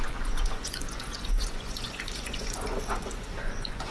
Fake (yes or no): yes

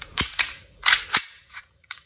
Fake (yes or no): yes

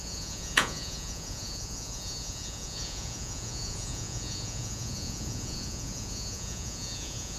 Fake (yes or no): yes